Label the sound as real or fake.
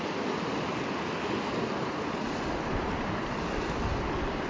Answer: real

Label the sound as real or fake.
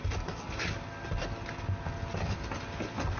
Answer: real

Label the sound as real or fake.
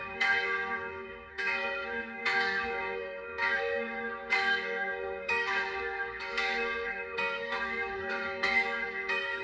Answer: fake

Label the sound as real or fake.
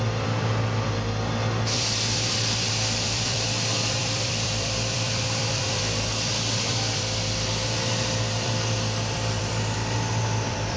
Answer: fake